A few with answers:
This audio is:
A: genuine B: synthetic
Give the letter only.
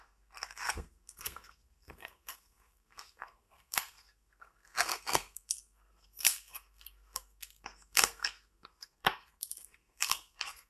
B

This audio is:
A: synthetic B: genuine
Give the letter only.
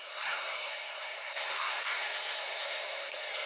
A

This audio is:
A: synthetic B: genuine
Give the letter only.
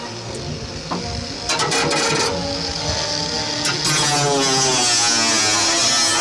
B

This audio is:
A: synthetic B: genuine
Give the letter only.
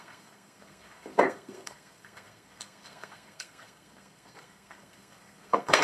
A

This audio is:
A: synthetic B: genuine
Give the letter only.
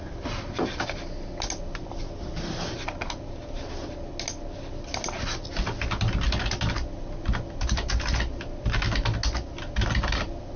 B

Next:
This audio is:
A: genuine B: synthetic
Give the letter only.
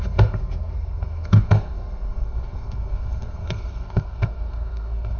B